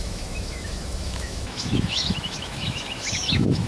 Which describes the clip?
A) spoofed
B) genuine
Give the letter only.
A